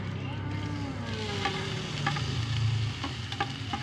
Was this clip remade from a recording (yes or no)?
no